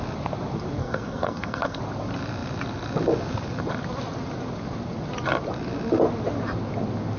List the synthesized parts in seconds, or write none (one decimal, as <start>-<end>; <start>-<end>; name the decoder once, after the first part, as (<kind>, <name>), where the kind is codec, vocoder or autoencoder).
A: 0.8-1.8 (codec, SNAC)